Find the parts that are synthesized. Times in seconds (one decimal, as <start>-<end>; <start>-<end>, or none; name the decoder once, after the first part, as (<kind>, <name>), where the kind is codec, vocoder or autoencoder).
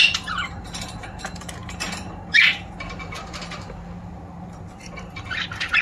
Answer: 0.0-5.8 (vocoder, BigVGAN v2)